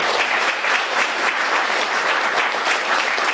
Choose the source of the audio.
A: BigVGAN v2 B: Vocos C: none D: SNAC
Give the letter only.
A